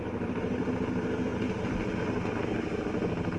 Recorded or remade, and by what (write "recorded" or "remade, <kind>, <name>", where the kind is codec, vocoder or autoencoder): recorded